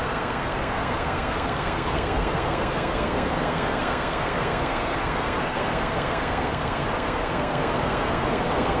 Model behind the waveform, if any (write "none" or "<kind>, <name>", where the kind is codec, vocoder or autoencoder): codec, SNAC